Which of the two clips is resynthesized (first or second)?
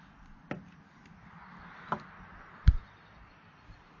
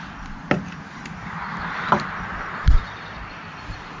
second